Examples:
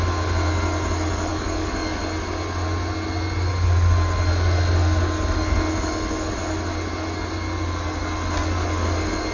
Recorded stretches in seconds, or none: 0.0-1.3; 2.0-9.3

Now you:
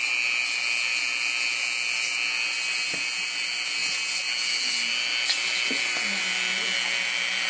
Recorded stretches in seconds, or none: 0.0-7.5

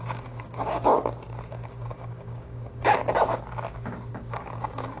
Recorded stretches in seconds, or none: 0.9-1.5; 3.0-4.1

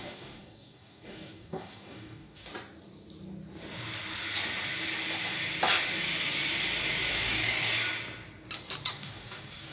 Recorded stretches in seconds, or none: 2.5-7.1; 7.7-8.9

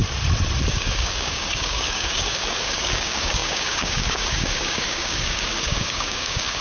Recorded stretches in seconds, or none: 0.0-0.7